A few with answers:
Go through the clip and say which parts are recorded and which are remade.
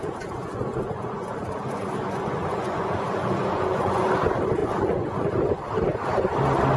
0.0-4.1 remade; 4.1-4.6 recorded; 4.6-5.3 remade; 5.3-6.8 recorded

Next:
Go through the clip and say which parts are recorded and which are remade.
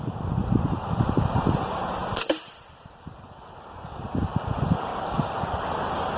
0.0-2.0 remade; 2.0-4.0 recorded; 4.0-4.9 remade; 4.9-6.2 recorded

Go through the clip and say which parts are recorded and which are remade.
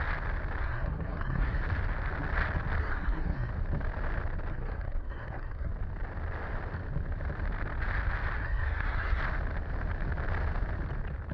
0.0-0.6 recorded; 0.6-1.6 remade; 1.6-2.8 recorded; 2.8-3.5 remade; 3.5-4.5 recorded; 4.5-5.7 remade; 5.7-8.4 recorded; 8.4-9.2 remade; 9.2-11.3 recorded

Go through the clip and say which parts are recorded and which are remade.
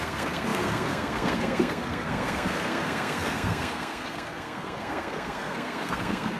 0.0-6.4 remade